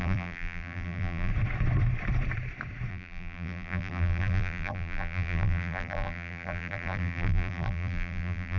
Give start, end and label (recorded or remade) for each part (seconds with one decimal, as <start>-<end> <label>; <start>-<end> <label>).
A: 0.0-1.3 remade; 1.3-2.9 recorded; 2.9-8.6 remade